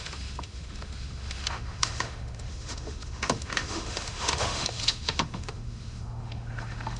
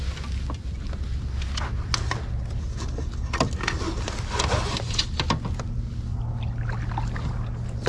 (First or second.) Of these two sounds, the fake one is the first